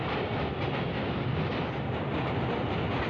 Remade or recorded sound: recorded